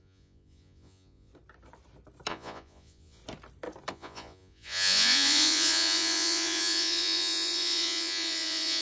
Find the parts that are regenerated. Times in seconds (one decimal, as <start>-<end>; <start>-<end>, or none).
0.0-1.3; 2.3-3.2; 3.9-8.8